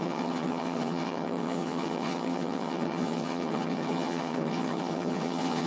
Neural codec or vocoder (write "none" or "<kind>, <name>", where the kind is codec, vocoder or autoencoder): vocoder, HiFi-GAN